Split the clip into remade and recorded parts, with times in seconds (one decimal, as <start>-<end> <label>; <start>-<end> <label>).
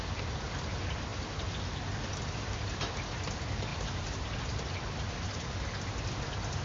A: 0.0-3.7 recorded; 3.7-5.4 remade; 5.4-6.6 recorded